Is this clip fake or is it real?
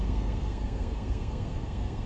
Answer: fake